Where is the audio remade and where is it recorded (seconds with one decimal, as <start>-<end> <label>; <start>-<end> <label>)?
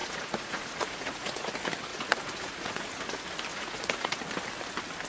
0.0-1.5 remade; 1.5-1.9 recorded; 1.9-3.0 remade; 3.0-3.5 recorded; 3.5-4.2 remade; 4.2-5.1 recorded